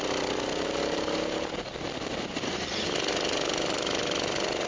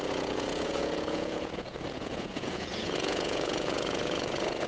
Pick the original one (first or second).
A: first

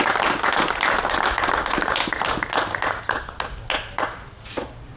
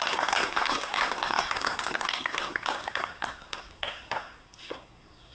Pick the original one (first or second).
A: first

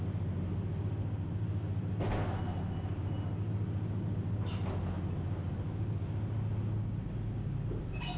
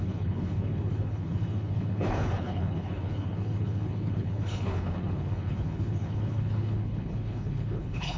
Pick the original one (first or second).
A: first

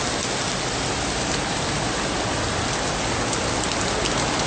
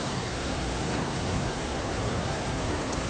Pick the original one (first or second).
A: first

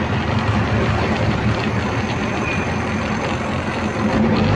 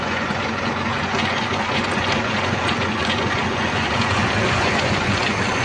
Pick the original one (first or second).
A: first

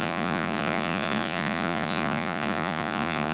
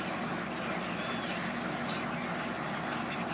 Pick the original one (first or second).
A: second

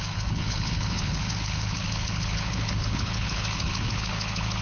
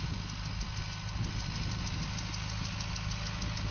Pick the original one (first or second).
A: second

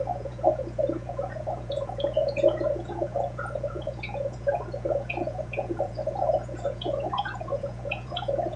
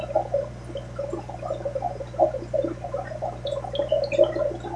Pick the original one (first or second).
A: second